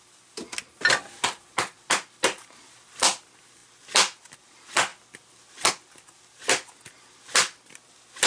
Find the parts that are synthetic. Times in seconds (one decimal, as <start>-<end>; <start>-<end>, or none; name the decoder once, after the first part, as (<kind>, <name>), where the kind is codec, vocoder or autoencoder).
none